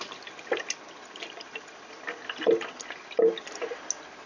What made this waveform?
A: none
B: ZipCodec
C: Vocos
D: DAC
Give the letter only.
A